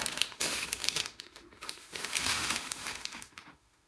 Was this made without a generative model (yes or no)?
no